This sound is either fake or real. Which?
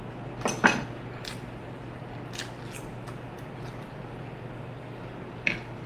real